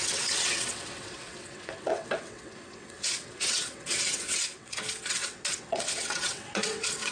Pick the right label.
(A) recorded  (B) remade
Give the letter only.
B